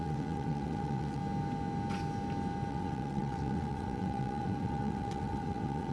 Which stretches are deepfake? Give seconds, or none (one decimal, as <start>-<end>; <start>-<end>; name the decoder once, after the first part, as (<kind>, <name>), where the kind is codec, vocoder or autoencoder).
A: 0.0-1.2 (vocoder, WaveNeXt); 2.7-5.9